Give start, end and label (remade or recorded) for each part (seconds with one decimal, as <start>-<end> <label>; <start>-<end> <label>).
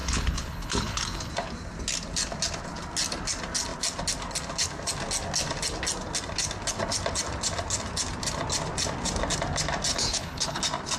0.0-1.3 remade; 1.3-9.9 recorded; 9.9-10.6 remade; 10.6-11.0 recorded